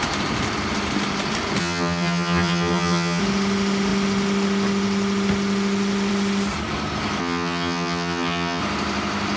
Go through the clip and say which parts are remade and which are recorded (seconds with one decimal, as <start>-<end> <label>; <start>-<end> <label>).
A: 0.0-1.6 recorded; 1.6-3.2 remade; 3.2-7.2 recorded; 7.2-8.6 remade; 8.6-9.4 recorded